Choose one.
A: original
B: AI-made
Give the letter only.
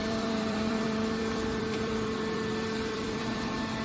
B